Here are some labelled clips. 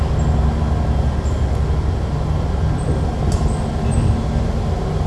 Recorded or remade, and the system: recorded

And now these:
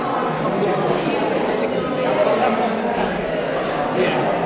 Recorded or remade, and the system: recorded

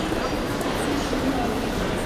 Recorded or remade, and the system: recorded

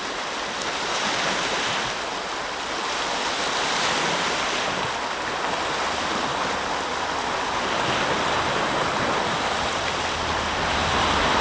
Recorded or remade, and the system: recorded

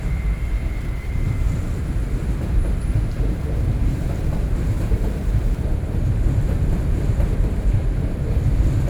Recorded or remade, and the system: remade, vocoder, BigVGAN v2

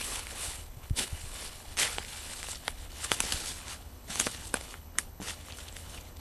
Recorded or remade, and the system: remade, codec, HILCodec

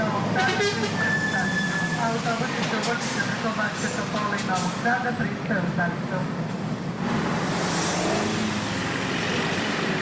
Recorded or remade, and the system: recorded